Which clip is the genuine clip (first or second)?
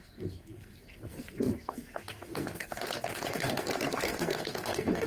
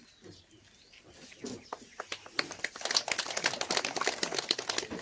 second